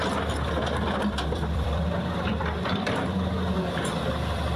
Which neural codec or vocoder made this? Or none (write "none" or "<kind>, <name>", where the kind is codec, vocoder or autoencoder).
vocoder, BigVGAN v2